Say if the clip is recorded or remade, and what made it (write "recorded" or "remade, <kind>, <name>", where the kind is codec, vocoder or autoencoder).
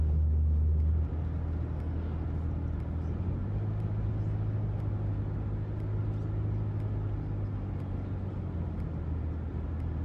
recorded